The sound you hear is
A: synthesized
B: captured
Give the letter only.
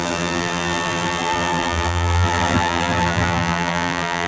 A